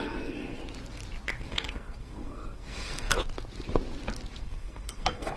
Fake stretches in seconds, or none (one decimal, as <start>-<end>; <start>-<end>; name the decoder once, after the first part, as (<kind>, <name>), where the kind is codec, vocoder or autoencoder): 0.0-0.6 (codec, SNAC); 1.4-3.1; 4.4-5.4